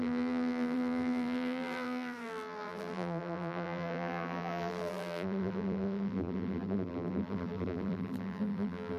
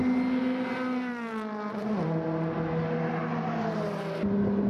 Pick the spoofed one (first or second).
first